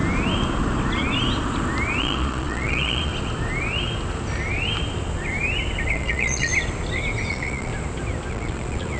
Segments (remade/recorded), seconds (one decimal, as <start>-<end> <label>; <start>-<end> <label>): 0.0-2.0 recorded; 2.0-3.1 remade; 3.1-5.9 recorded; 5.9-6.5 remade; 6.5-7.3 recorded; 7.3-7.7 remade; 7.7-8.3 recorded; 8.3-9.0 remade